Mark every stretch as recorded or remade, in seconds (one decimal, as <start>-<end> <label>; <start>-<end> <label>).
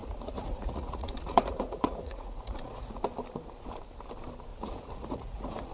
0.0-3.0 remade; 3.0-4.5 recorded; 4.5-5.7 remade